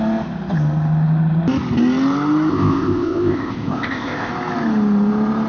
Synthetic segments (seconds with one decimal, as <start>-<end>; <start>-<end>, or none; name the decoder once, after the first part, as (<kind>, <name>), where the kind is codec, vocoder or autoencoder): 2.5-4.3 (codec, ZipCodec)